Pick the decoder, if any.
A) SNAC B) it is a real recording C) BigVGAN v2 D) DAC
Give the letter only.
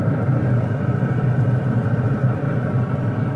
B